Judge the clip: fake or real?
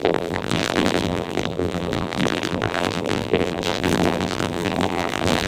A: fake